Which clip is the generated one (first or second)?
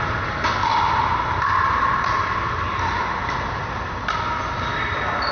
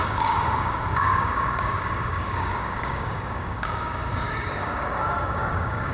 second